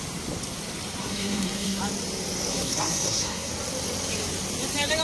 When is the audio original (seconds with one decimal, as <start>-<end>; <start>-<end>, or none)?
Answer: 0.0-1.0; 1.8-2.5; 3.5-5.0